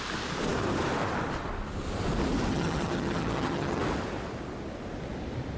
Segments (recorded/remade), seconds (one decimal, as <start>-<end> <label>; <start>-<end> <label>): 0.0-2.5 recorded; 2.5-3.8 remade; 3.8-5.6 recorded